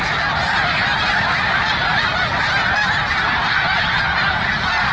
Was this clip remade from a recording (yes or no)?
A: no